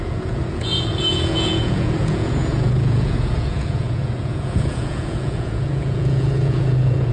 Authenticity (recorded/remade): remade